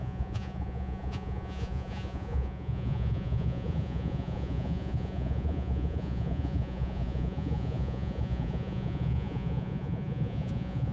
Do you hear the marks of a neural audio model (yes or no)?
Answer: yes